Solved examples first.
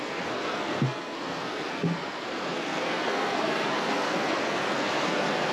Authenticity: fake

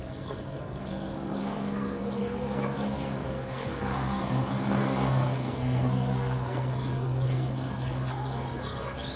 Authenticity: fake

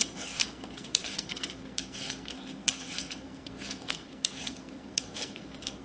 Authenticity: fake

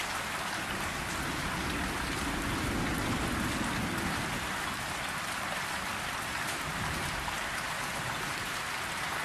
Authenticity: real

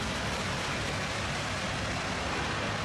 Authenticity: real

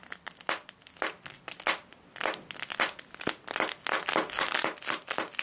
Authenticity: real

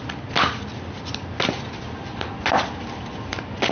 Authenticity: real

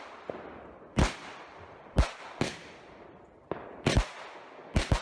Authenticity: real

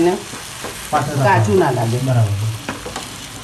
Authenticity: real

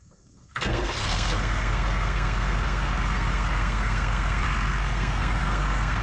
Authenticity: fake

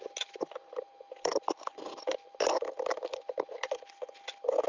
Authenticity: real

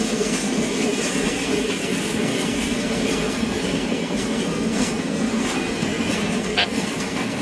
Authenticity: fake